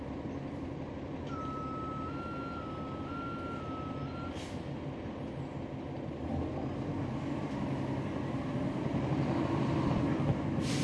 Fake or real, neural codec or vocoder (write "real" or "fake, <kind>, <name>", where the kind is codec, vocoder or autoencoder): real